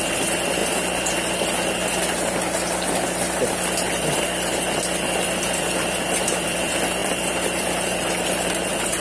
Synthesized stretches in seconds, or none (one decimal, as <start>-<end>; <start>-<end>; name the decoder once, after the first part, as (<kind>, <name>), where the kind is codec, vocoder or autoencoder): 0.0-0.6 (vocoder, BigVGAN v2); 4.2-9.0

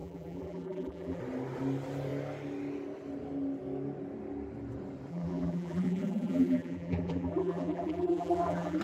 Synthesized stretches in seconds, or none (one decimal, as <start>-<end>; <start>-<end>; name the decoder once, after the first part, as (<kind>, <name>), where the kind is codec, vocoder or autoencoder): 0.0-1.2 (vocoder, BigVGAN v2); 5.1-8.8

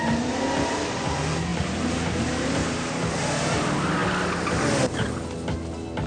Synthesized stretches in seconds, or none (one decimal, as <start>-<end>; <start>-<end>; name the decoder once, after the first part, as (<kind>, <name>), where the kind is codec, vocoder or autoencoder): 1.5-3.0 (vocoder, BigVGAN v2)

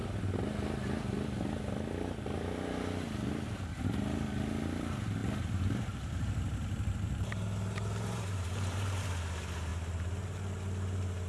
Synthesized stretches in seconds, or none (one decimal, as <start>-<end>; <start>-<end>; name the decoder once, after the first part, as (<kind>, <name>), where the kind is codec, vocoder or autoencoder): 5.2-9.2 (vocoder, BigVGAN v2)

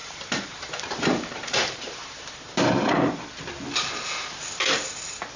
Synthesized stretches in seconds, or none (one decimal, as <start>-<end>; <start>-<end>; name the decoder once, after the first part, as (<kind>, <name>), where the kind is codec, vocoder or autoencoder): 0.0-3.2 (vocoder, BigVGAN v2)

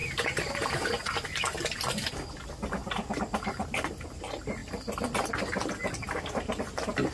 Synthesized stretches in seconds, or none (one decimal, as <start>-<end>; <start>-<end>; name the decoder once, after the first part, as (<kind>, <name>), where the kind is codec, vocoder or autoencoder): 0.0-0.6 (vocoder, BigVGAN v2); 2.8-3.9